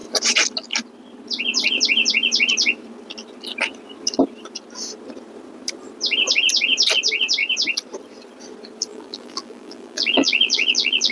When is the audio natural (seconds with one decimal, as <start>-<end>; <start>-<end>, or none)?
0.0-8.9